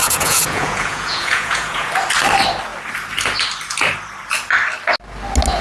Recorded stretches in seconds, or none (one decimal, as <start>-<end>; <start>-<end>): 1.9-5.6